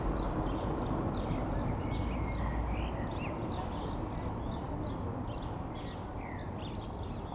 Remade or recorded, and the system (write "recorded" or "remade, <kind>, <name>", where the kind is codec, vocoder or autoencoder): recorded